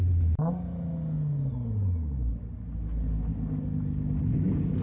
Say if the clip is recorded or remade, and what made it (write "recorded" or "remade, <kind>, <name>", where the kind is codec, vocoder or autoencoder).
recorded